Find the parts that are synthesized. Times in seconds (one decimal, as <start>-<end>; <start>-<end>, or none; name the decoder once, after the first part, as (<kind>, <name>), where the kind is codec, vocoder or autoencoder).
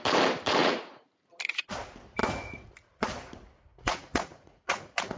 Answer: 0.6-1.2 (vocoder, Vocos); 2.2-2.7; 3.7-5.2